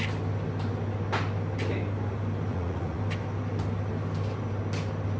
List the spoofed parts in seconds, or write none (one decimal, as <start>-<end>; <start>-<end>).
2.5-3.0